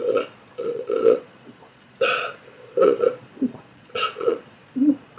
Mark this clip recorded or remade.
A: remade